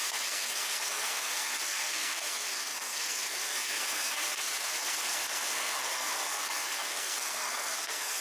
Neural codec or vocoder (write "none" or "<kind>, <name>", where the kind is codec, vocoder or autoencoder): codec, SNAC